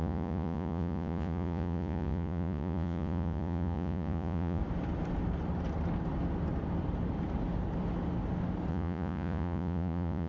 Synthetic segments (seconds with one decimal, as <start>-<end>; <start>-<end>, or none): 0.0-4.6; 8.7-10.3